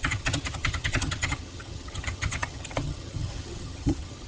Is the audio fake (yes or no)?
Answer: yes